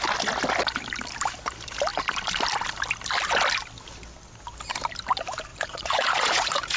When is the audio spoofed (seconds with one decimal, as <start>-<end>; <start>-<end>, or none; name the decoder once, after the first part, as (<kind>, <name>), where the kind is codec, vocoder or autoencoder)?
5.5-6.8 (vocoder, Vocos)